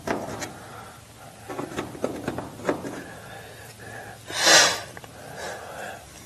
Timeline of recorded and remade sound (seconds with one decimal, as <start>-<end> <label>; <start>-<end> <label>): 0.0-6.3 recorded